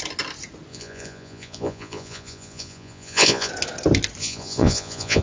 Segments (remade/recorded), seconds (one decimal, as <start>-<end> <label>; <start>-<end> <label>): 0.0-0.7 recorded; 0.7-3.5 remade; 3.5-4.2 recorded; 4.2-5.2 remade